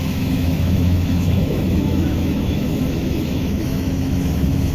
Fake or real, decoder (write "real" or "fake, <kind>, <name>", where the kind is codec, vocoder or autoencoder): fake, autoencoder, DAC-VAE